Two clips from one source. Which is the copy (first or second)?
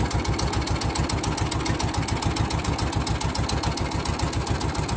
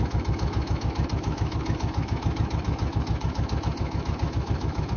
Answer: second